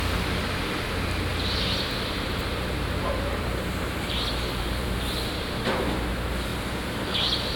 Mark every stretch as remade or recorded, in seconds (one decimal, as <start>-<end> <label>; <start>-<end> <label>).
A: 0.0-1.3 recorded; 1.3-5.8 remade; 5.8-6.5 recorded; 6.5-7.6 remade